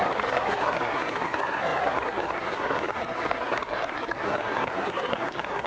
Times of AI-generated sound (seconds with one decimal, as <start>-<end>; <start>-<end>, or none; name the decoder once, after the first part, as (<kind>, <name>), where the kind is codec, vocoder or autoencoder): 0.0-5.7 (codec, SNAC)